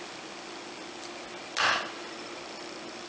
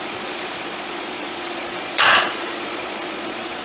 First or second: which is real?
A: first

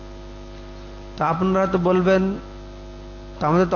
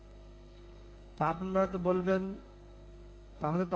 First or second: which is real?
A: first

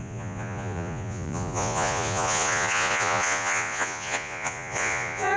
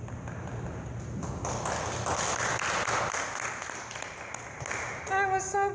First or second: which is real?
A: second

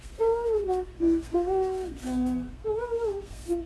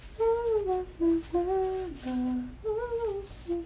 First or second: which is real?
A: second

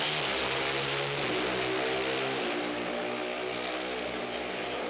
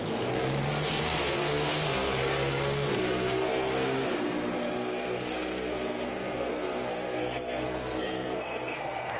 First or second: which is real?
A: first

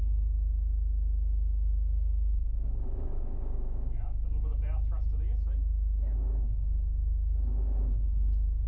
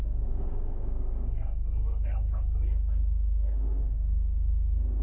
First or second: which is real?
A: first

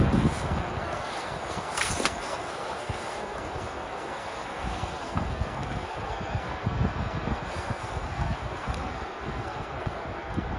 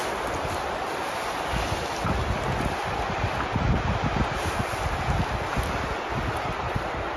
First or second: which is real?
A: second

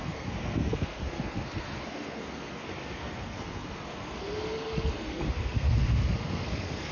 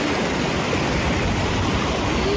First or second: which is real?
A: second